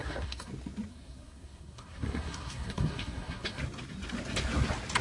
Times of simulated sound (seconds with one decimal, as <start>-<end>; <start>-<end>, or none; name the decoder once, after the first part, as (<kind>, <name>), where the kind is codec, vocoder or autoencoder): 0.0-0.5 (codec, SNAC); 0.9-3.6